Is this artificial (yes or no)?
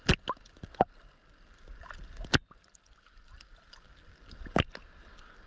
no